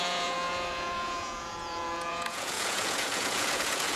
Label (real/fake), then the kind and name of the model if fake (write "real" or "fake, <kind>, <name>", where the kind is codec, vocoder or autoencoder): fake, vocoder, Vocos